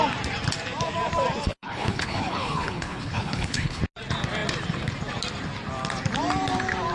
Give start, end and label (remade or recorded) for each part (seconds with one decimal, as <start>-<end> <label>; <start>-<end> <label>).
0.0-1.5 recorded; 1.5-3.8 remade; 3.8-6.9 recorded